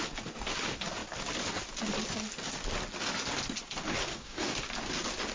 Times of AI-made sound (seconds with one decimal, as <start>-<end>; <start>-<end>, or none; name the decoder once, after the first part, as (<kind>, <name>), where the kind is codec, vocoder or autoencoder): 4.1-4.7 (codec, DAC)